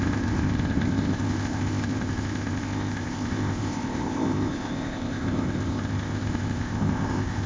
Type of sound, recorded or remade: remade